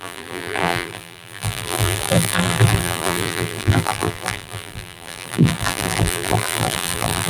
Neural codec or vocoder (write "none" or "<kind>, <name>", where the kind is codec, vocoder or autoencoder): vocoder, BigVGAN v2